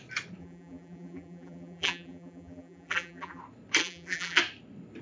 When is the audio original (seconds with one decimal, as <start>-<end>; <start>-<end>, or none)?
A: 0.0-0.4; 3.4-3.8; 4.4-5.0